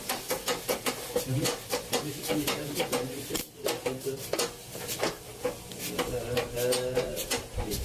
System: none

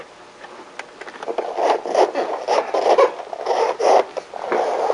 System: none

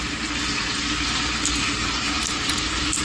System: vocoder, BigVGAN v2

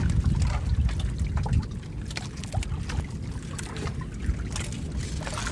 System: none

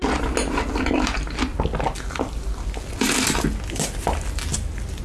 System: none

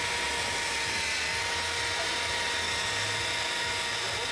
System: none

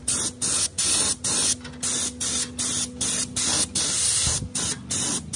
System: none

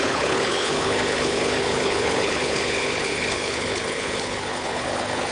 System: codec, HILCodec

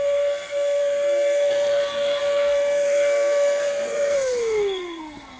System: codec, SNAC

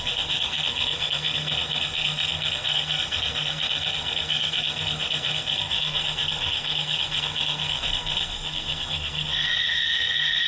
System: codec, SNAC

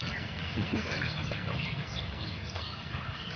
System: codec, SNAC